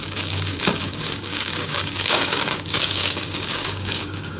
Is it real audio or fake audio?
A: fake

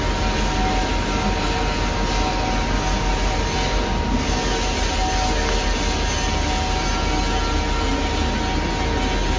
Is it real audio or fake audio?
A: real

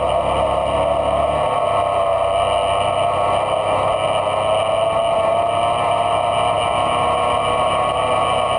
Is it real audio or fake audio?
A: real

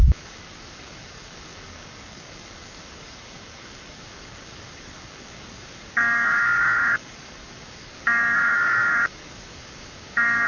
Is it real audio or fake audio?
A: fake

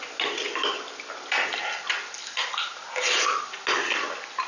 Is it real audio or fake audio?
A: real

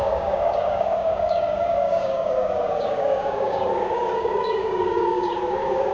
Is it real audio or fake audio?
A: fake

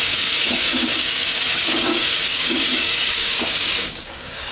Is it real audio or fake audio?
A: fake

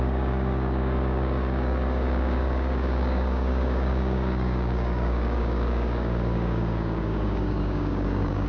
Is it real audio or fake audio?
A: fake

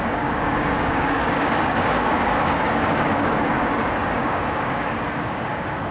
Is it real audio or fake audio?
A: fake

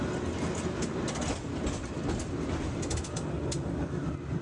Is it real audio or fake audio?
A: real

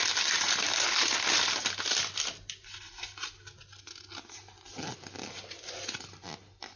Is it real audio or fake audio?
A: real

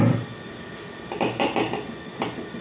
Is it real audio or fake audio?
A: real